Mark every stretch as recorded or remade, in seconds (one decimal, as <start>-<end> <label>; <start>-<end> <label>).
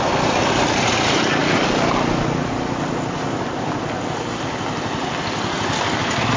0.0-6.4 recorded